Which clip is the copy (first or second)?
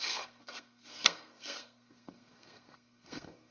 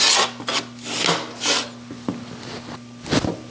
first